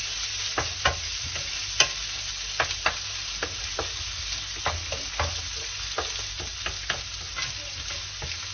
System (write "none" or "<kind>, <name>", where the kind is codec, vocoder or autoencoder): none